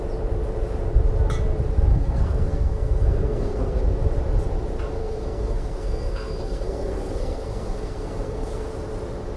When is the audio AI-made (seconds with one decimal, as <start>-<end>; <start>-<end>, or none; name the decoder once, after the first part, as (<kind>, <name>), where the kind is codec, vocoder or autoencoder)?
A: 1.9-3.8 (codec, SNAC); 5.0-8.7